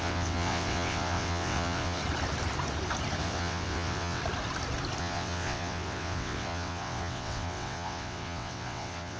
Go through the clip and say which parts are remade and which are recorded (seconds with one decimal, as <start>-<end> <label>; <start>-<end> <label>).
0.0-2.0 remade; 2.0-3.2 recorded; 3.2-4.2 remade; 4.2-5.0 recorded; 5.0-9.2 remade